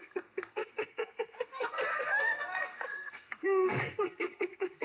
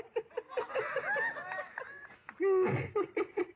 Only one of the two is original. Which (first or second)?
second